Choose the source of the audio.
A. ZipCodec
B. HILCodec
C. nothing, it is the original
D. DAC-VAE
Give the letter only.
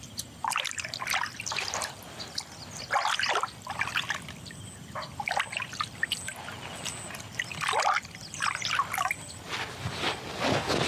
C